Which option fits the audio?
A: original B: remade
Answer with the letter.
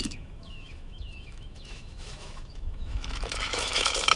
B